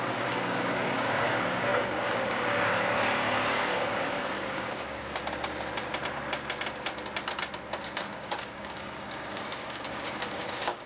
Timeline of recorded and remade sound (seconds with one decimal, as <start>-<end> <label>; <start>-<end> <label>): 0.0-5.2 remade; 5.2-7.8 recorded; 7.8-10.9 remade